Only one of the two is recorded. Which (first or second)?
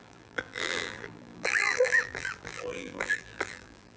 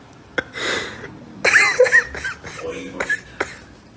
second